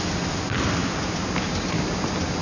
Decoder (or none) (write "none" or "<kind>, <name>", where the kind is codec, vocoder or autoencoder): none